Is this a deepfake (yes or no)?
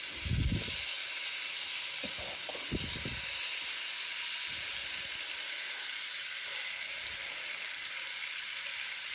no